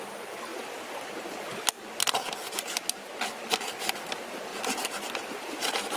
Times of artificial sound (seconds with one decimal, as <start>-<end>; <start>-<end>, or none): none